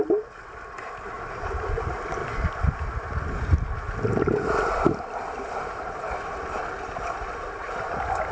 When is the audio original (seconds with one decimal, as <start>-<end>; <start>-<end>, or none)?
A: 0.0-8.3